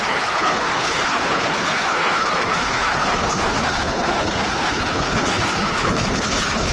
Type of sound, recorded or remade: remade